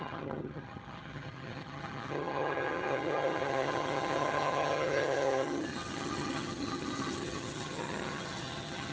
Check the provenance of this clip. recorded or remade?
remade